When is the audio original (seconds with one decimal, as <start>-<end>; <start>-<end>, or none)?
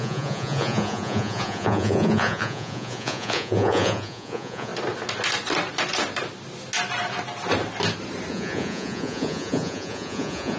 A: 4.7-8.3